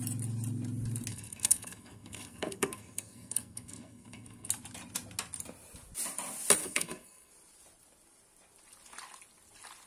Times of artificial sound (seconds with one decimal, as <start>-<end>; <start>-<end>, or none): 1.1-4.5; 6.6-7.3